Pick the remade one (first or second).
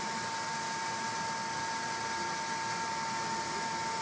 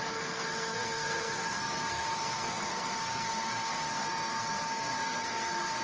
second